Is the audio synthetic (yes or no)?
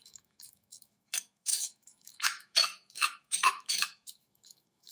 yes